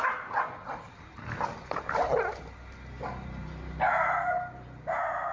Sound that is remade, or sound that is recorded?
recorded